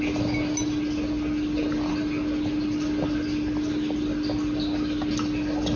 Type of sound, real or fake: real